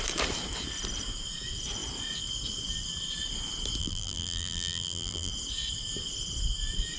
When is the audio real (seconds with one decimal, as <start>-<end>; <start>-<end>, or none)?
0.0-3.8; 5.3-7.0

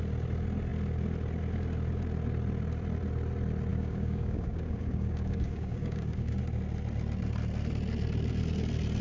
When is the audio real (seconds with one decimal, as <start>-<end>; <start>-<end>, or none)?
0.0-3.7; 6.4-9.0